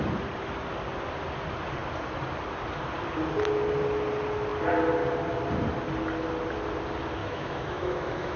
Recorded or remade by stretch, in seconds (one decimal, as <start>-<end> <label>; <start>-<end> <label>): 0.0-7.2 recorded; 7.2-8.4 remade